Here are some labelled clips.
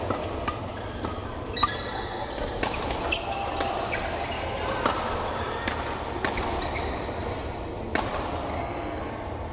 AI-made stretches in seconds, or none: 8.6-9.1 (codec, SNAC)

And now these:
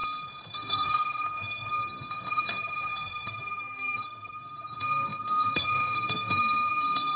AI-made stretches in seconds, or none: 0.5-7.2 (codec, SNAC)

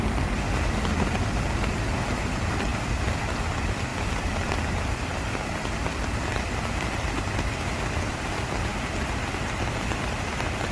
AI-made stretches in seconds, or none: none

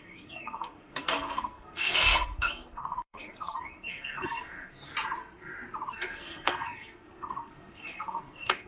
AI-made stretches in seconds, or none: 0.0-4.9 (codec, SNAC); 5.9-8.7